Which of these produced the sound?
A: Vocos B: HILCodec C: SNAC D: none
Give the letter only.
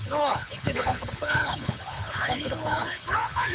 B